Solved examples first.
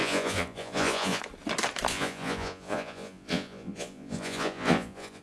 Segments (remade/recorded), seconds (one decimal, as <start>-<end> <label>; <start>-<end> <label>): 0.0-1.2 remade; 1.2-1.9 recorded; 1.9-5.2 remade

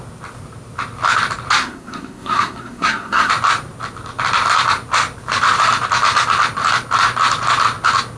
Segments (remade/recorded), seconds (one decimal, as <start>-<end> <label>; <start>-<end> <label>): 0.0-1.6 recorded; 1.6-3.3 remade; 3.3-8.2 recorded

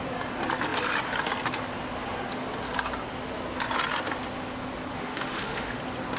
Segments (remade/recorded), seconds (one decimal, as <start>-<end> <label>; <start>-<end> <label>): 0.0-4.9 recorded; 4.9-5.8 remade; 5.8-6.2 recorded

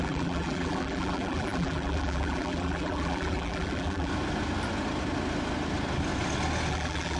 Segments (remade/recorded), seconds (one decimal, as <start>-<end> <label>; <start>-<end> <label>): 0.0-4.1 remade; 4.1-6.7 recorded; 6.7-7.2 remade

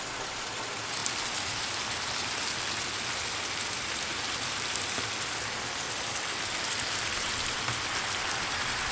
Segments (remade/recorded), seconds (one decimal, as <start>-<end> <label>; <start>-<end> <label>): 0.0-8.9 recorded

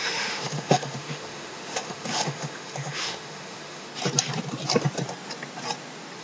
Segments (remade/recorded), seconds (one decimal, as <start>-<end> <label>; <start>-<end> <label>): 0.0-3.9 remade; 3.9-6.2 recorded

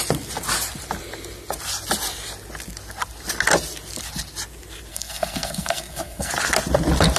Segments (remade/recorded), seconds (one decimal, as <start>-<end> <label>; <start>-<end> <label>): 0.0-4.9 recorded; 4.9-6.3 remade; 6.3-7.2 recorded